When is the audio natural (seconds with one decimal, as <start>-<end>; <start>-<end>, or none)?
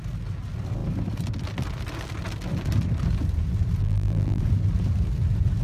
0.0-3.8; 4.4-5.6